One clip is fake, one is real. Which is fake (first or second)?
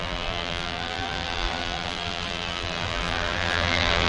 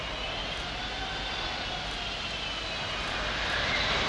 first